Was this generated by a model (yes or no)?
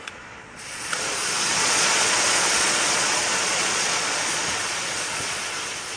yes